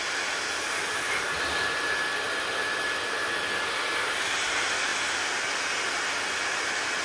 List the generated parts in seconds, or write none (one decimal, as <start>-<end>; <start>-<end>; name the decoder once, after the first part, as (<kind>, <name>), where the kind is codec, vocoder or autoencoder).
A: none